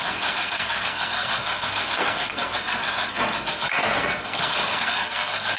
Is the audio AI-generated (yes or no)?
yes